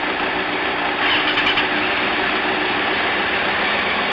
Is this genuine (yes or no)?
yes